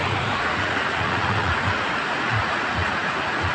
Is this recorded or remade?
remade